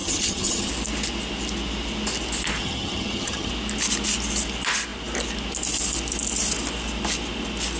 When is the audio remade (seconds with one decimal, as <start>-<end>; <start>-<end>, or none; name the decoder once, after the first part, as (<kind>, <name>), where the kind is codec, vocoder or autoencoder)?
0.0-0.7 (vocoder, HiFi-GAN); 2.6-3.5